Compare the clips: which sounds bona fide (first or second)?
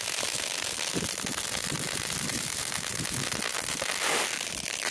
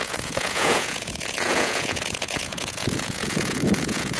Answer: first